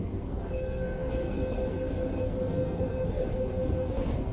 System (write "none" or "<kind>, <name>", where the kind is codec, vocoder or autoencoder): codec, SNAC